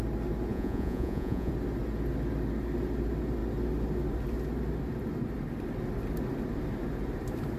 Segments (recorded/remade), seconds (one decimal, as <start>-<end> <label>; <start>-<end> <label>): 0.0-0.5 recorded; 0.5-1.5 remade; 1.5-7.6 recorded